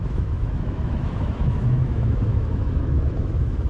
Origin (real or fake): fake